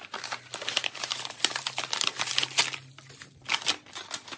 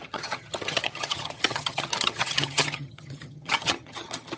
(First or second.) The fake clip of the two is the second